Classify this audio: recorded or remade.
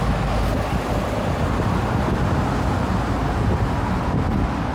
recorded